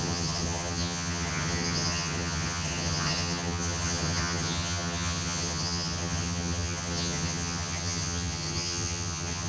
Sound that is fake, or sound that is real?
fake